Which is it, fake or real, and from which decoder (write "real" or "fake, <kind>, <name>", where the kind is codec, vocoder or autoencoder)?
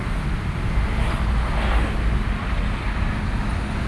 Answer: real